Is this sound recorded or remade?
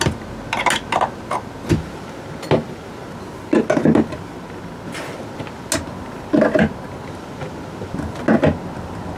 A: recorded